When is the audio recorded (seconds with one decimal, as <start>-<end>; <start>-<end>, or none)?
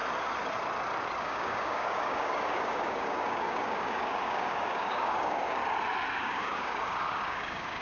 0.0-1.2; 5.6-6.2